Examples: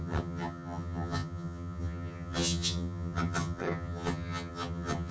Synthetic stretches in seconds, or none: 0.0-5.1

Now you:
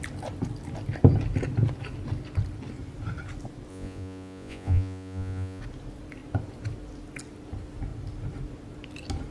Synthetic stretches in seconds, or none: 3.7-5.6

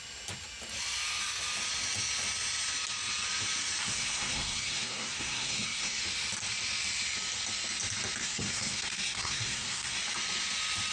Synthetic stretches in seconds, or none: 3.8-6.0; 8.2-10.0